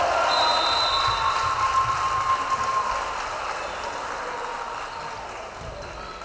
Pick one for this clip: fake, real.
real